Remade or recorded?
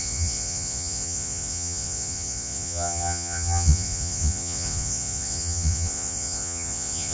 remade